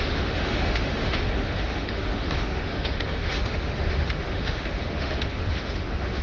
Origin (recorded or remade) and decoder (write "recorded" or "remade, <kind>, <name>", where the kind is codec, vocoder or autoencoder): remade, autoencoder, DAC-VAE